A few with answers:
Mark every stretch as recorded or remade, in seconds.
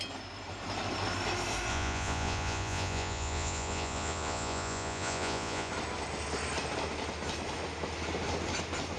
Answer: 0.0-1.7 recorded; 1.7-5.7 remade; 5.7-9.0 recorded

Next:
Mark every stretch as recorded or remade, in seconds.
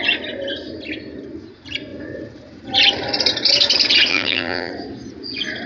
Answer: 0.0-4.1 recorded; 4.1-4.7 remade; 4.7-5.7 recorded